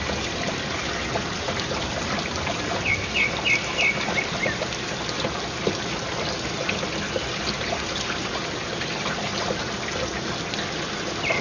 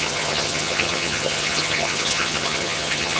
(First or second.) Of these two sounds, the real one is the first